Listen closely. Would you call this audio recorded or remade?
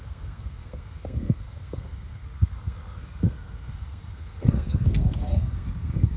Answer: remade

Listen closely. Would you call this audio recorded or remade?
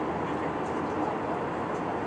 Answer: recorded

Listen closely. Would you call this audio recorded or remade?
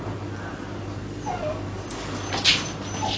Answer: recorded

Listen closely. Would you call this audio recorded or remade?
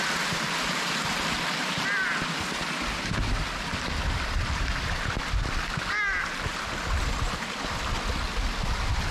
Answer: recorded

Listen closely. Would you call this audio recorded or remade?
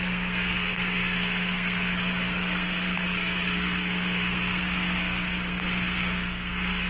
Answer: remade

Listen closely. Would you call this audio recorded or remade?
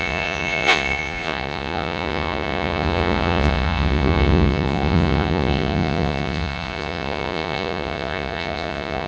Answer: remade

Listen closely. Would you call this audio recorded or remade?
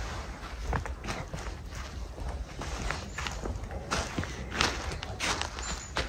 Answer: recorded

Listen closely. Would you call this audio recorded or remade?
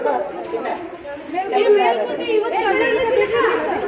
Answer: recorded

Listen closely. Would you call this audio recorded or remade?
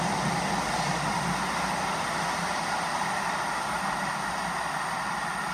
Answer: recorded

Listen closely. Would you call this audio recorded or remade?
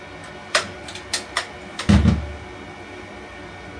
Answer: recorded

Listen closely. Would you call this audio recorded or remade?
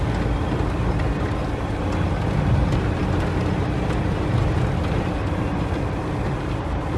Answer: recorded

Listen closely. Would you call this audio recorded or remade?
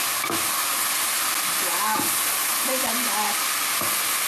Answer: recorded